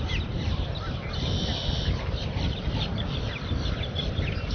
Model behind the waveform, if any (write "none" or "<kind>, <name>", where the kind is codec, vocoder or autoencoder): vocoder, BigVGAN v2